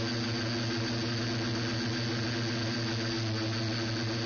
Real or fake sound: real